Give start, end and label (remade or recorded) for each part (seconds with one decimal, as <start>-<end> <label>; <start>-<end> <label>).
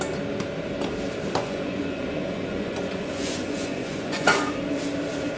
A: 0.0-1.4 recorded; 1.4-4.5 remade; 4.5-5.4 recorded